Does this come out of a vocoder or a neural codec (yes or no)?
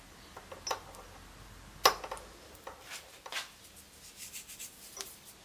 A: no